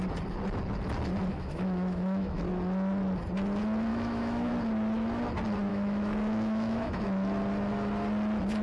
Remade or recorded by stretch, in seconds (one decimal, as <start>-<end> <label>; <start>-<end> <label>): 0.0-1.3 recorded; 1.3-2.4 remade; 2.4-3.9 recorded; 3.9-4.5 remade; 4.5-5.7 recorded; 5.7-7.0 remade; 7.0-8.6 recorded